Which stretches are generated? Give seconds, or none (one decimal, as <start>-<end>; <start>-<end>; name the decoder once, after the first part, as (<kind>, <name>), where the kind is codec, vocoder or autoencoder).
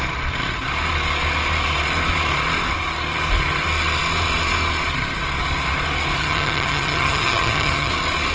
6.2-7.9 (vocoder, HiFi-GAN)